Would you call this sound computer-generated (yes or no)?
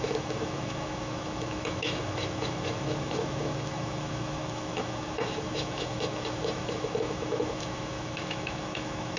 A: yes